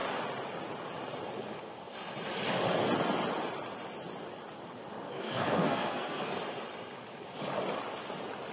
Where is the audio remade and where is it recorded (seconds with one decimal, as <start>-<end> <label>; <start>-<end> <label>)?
0.0-5.0 recorded; 5.0-6.3 remade; 6.3-8.5 recorded